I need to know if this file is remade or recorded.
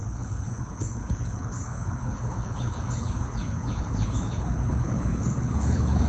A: remade